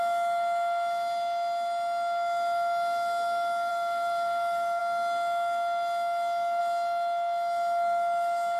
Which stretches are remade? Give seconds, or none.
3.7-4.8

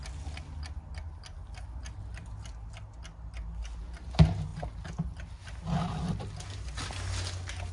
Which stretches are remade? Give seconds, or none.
none

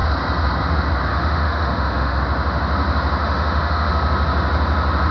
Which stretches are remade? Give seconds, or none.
1.1-2.2; 3.2-3.9

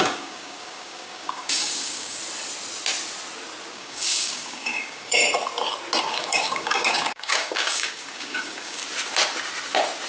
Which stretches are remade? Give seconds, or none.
0.0-2.2; 3.7-5.2; 6.0-8.8

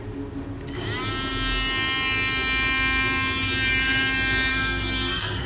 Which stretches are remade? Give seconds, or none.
4.5-5.5

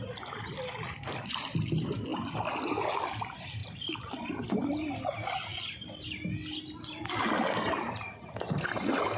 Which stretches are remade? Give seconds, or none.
none

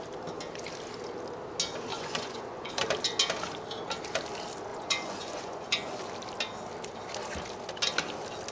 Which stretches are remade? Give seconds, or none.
1.9-2.7; 4.7-6.0

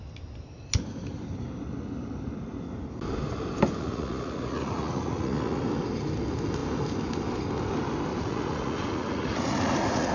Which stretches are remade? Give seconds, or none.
3.8-5.6; 8.1-10.1